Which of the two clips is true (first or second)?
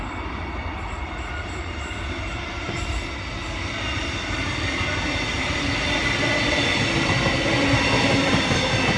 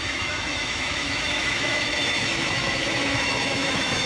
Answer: first